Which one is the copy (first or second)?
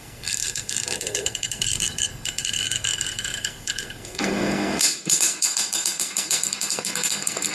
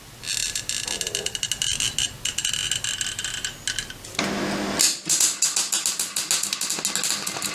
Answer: first